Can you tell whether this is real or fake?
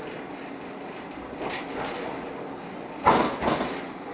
real